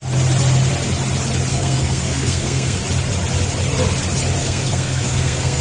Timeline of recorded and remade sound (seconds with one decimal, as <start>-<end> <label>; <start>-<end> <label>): 0.0-1.5 recorded; 1.5-2.8 remade; 2.8-4.4 recorded; 4.4-5.6 remade